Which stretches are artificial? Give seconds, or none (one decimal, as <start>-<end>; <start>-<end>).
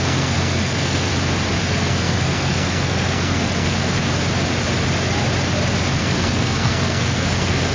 0.0-1.1; 1.6-4.0; 6.0-7.7